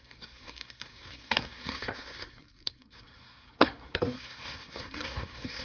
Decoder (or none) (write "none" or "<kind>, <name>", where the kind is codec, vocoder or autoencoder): codec, SNAC